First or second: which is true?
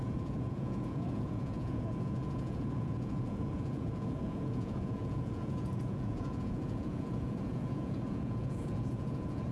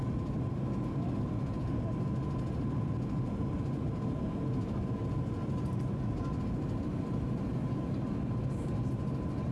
second